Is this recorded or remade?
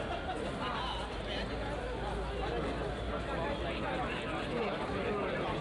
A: recorded